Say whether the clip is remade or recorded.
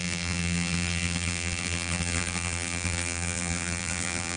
remade